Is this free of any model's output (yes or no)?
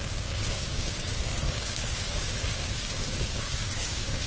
no